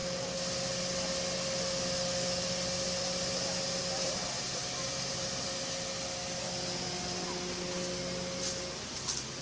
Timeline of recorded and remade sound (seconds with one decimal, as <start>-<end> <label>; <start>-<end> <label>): 0.0-9.4 recorded